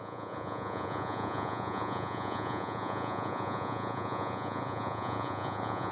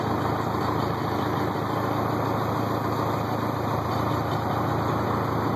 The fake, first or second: first